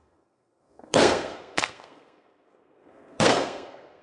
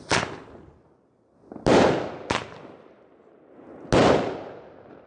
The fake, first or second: first